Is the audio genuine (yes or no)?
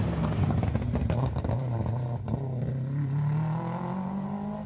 yes